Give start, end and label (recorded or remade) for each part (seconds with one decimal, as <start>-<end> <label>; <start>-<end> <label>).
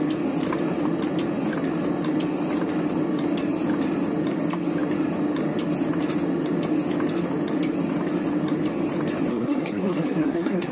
0.0-9.3 recorded; 9.3-10.7 remade